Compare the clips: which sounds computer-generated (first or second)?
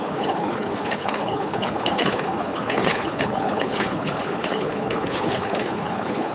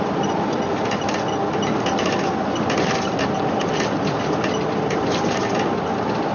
first